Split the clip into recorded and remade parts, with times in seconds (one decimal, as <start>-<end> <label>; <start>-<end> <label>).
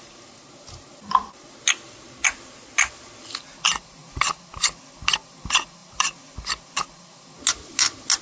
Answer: 0.0-5.8 recorded; 5.8-6.6 remade; 6.6-8.2 recorded